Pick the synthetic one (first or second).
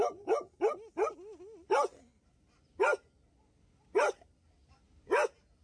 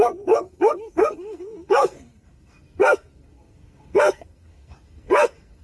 second